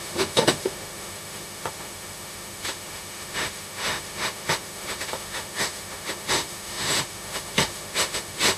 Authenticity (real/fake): fake